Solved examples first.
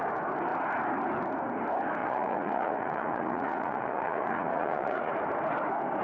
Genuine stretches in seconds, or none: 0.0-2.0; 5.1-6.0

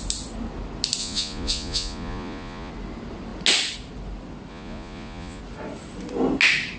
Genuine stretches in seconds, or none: 0.0-1.0; 2.7-4.5; 5.4-6.8

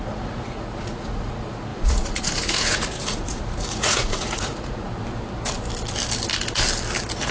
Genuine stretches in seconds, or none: 4.9-7.3

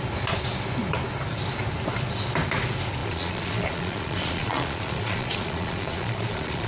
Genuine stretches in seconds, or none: 0.0-3.0